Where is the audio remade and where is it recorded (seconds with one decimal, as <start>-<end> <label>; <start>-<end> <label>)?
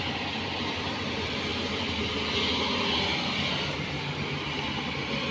0.0-5.3 recorded